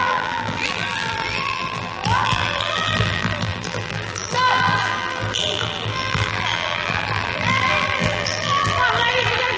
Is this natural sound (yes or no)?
no